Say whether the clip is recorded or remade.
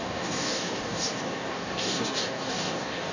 remade